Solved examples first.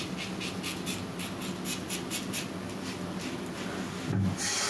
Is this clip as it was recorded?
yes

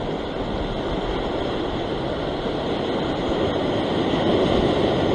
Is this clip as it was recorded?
yes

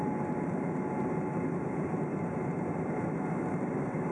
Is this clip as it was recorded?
yes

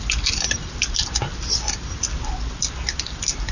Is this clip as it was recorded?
yes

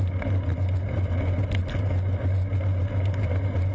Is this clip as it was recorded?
yes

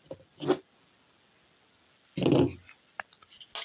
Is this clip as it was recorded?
yes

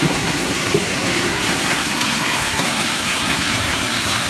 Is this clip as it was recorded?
no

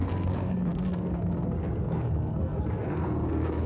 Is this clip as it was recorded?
no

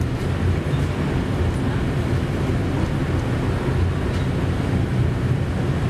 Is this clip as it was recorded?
yes